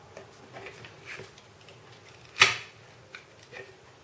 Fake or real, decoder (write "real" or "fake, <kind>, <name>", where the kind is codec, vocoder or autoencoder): real